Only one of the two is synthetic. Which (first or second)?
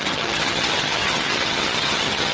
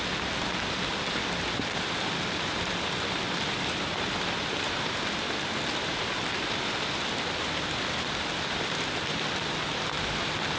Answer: first